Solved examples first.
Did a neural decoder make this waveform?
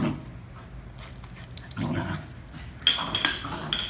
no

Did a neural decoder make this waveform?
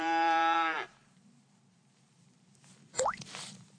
yes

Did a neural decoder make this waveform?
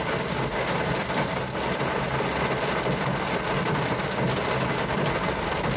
no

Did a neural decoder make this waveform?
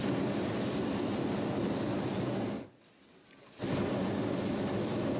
no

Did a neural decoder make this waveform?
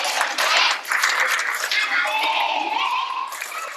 yes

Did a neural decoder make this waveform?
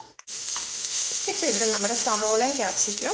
yes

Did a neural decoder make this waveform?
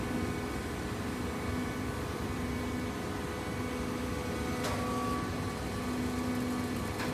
no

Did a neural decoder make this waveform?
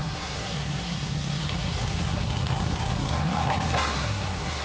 yes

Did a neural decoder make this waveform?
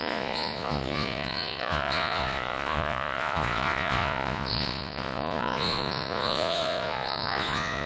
yes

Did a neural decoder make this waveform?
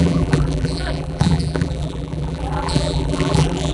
yes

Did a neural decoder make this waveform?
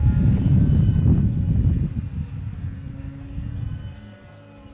no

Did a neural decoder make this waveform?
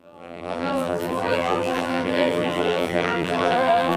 yes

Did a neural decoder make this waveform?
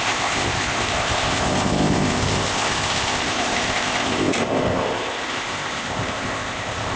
yes